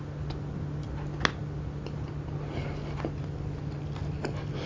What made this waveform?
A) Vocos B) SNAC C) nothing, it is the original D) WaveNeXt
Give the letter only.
C